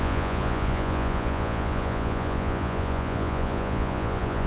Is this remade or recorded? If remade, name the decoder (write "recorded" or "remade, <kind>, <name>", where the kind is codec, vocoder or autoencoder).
remade, vocoder, Vocos